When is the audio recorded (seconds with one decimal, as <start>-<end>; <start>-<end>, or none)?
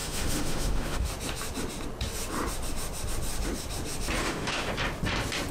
1.1-4.2; 4.7-5.5